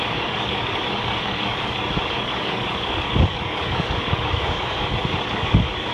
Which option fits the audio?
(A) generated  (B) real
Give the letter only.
A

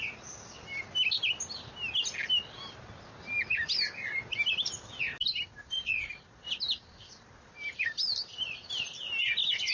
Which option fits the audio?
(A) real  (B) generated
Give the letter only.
A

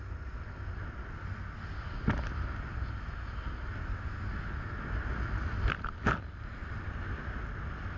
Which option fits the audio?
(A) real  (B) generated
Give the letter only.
A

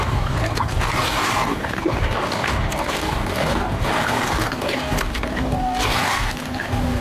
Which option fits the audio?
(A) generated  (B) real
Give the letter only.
A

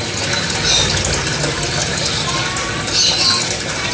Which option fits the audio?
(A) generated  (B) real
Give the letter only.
B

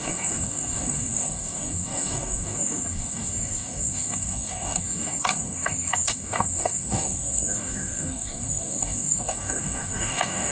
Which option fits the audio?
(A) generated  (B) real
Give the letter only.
A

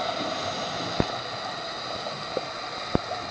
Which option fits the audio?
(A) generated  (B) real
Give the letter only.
B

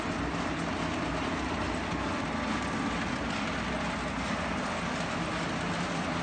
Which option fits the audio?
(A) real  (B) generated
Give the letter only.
A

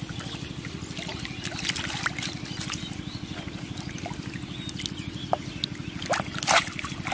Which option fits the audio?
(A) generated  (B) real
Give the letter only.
B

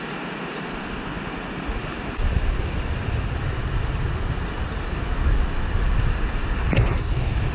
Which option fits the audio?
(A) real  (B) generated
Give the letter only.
A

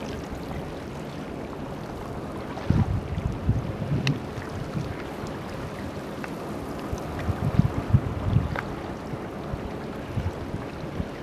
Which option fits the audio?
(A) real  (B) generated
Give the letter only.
A